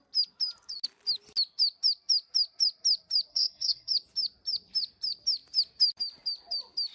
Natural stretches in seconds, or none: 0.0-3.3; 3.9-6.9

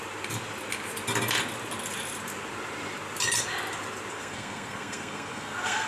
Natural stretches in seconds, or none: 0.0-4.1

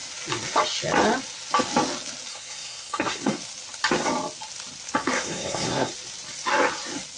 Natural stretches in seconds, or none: 0.0-2.3; 3.4-5.0; 5.9-7.2